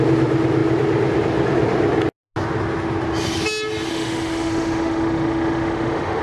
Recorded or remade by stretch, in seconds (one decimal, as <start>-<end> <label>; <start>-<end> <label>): 0.0-3.9 recorded; 3.9-6.2 remade